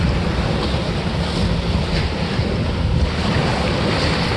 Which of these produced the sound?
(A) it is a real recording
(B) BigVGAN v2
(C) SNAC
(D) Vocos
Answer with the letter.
A